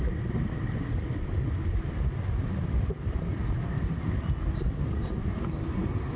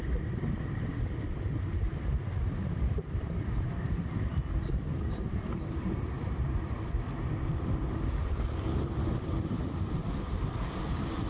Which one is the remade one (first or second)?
second